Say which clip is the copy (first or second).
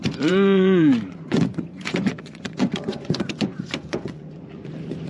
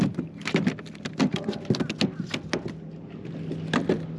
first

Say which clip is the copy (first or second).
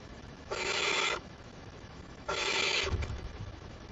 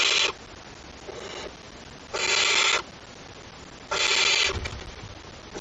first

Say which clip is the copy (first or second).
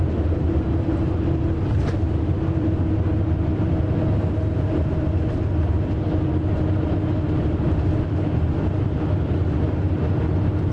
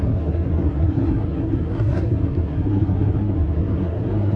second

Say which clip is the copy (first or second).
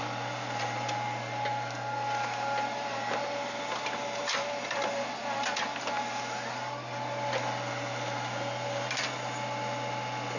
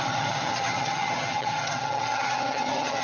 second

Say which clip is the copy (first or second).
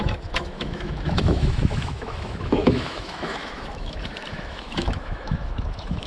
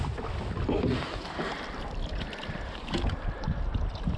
first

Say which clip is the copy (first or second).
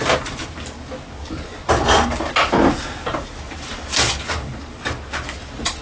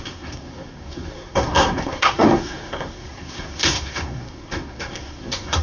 second